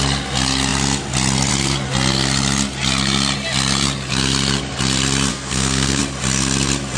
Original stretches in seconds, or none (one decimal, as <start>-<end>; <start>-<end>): 0.0-5.3; 6.0-7.0